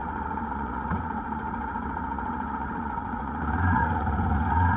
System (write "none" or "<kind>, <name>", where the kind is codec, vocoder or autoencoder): vocoder, Vocos